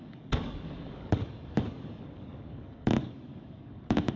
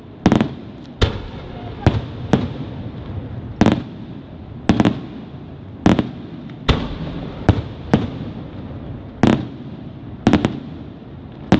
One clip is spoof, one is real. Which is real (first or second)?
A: second